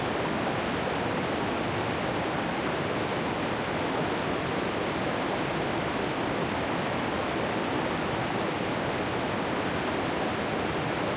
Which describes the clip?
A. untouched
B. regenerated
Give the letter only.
A